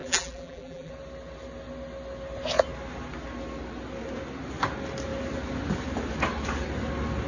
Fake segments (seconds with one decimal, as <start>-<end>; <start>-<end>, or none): 0.0-0.9